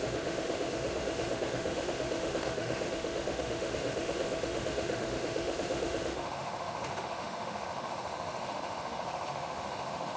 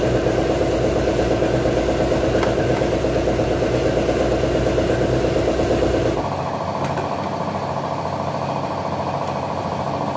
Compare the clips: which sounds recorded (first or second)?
second